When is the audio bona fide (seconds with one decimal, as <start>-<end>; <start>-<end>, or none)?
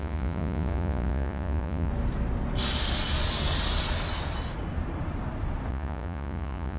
1.9-5.7